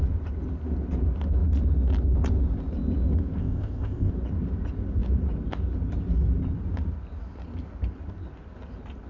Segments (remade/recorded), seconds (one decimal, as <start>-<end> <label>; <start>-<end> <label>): 0.0-3.4 recorded; 3.4-4.1 remade; 4.1-9.1 recorded